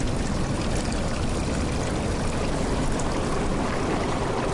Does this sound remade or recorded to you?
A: recorded